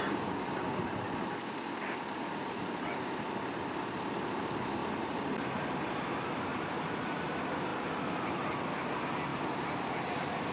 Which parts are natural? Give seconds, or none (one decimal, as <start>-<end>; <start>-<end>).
0.0-4.8; 5.5-6.5; 7.3-10.5